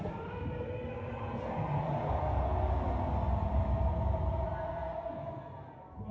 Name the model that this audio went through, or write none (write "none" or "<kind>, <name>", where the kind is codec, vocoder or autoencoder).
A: none